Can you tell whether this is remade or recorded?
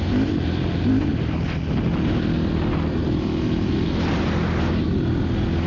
recorded